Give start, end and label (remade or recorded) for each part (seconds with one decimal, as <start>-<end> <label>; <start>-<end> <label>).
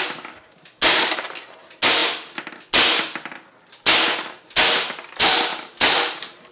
0.0-6.5 recorded